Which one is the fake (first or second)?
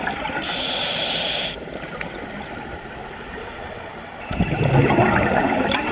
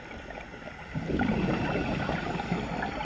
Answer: first